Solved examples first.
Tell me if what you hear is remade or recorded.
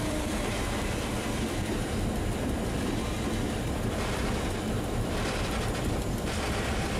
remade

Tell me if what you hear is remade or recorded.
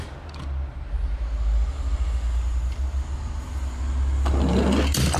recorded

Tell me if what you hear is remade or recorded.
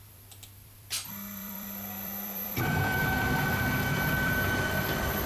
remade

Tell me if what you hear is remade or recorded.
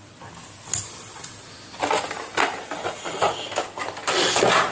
recorded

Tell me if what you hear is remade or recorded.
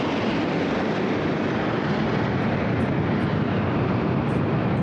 remade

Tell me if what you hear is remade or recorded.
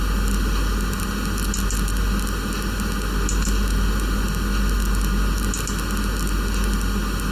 recorded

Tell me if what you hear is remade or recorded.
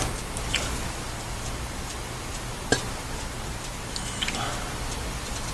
recorded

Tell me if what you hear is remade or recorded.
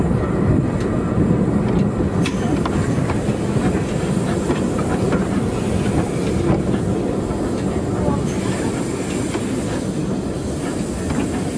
recorded